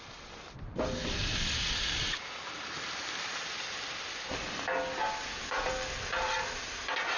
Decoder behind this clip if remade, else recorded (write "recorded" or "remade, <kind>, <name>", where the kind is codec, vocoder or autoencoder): recorded